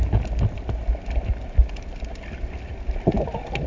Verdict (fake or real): real